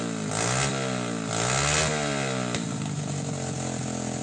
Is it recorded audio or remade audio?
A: recorded